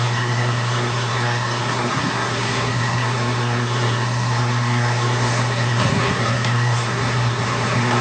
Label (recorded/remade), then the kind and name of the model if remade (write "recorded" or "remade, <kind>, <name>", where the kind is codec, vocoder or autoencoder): remade, codec, SNAC